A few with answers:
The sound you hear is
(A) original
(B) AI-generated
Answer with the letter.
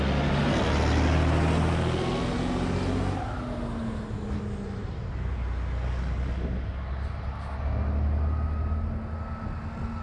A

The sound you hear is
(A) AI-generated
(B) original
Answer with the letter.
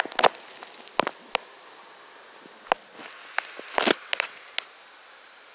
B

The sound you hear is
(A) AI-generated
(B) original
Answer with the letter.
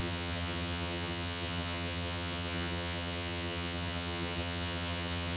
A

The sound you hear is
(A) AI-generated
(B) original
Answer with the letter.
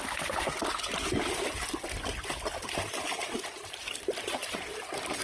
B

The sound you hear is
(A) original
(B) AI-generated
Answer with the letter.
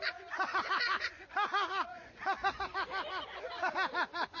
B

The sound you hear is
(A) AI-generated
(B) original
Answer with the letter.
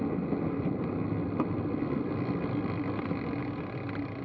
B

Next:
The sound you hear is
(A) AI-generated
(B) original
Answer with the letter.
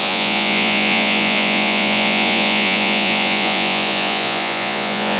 A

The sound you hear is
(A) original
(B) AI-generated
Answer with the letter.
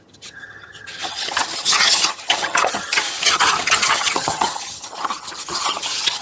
B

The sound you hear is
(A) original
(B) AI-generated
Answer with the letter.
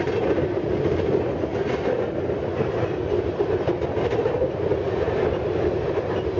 A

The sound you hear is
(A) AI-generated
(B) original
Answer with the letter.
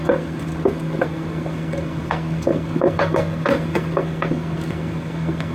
A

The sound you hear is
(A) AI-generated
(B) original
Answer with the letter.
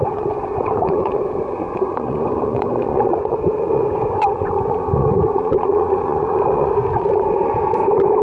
A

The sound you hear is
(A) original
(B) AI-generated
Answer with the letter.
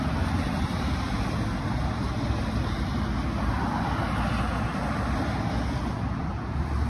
A